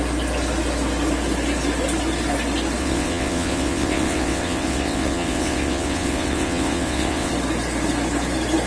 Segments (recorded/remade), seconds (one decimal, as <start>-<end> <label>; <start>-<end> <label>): 0.0-2.8 recorded; 2.8-7.3 remade; 7.3-8.7 recorded

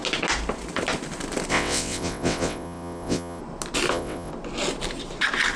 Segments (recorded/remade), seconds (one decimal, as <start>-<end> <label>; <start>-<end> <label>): 0.0-1.5 recorded; 1.5-3.4 remade; 3.4-3.9 recorded; 3.9-4.3 remade; 4.3-5.6 recorded